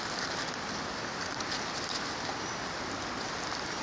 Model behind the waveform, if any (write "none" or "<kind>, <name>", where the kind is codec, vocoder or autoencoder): none